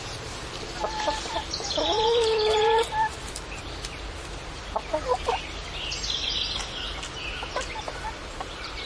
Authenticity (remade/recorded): recorded